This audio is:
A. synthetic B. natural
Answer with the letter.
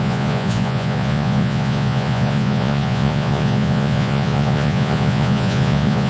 A